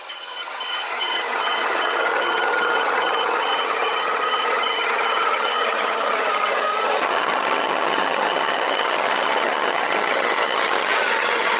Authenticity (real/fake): fake